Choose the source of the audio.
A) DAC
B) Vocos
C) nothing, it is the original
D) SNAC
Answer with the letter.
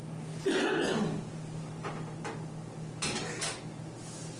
C